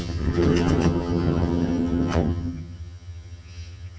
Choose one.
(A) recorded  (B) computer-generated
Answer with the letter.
B